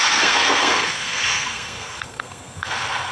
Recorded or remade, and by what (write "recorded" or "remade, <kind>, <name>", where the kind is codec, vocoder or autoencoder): remade, codec, SNAC